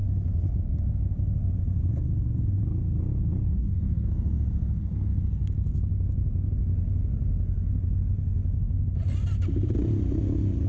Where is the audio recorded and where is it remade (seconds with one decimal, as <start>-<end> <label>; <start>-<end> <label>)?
0.0-3.6 recorded; 3.6-5.2 remade; 5.2-10.7 recorded